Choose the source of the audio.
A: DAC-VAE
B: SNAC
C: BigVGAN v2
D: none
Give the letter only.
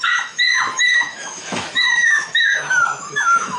A